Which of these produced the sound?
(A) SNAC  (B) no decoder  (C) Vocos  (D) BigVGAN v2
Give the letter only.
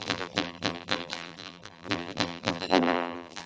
D